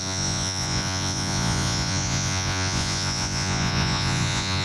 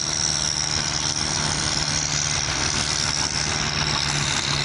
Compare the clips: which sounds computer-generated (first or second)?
first